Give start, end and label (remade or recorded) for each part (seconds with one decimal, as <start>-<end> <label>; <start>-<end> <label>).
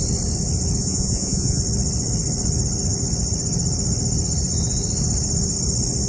0.0-0.8 recorded; 0.8-1.6 remade; 1.6-6.1 recorded